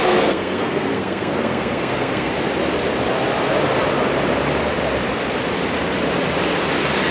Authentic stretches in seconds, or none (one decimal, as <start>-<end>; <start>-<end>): 2.3-7.1